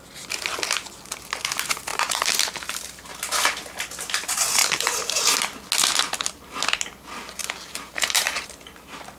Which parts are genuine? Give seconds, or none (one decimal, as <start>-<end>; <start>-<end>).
0.0-1.9; 3.4-4.6; 5.2-7.4; 8.5-9.2